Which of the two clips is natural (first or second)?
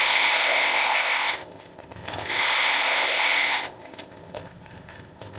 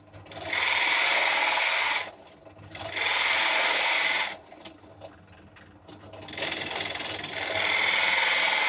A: second